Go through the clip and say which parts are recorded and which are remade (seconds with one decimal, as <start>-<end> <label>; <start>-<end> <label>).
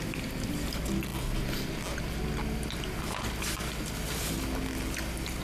0.0-5.4 recorded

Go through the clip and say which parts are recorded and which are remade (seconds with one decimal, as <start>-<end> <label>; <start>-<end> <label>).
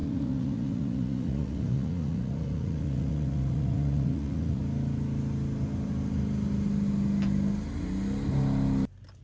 0.0-4.6 remade; 4.6-9.2 recorded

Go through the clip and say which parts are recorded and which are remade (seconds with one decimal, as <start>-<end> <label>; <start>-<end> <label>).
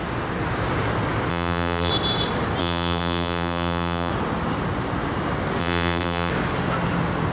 0.0-1.3 recorded; 1.3-1.9 remade; 1.9-2.6 recorded; 2.6-4.1 remade; 4.1-5.6 recorded; 5.6-6.3 remade; 6.3-7.3 recorded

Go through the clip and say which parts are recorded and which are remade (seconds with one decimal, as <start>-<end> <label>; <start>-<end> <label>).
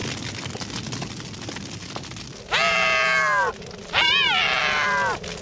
0.0-5.4 recorded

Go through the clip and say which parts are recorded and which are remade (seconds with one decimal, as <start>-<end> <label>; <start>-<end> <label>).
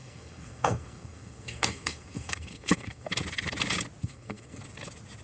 0.0-3.1 remade; 3.1-4.0 recorded; 4.0-4.6 remade; 4.6-5.2 recorded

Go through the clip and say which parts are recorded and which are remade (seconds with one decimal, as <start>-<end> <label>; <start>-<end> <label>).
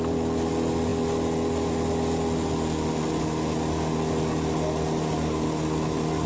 0.0-6.3 recorded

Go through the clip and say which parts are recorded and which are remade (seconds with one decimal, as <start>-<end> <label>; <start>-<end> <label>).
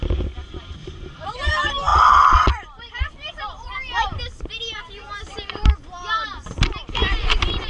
0.0-0.8 recorded; 0.8-1.5 remade; 1.5-7.7 recorded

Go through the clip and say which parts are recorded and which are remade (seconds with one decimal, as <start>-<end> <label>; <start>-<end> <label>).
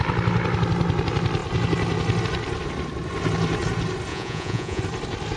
0.0-4.1 recorded; 4.1-4.8 remade; 4.8-5.4 recorded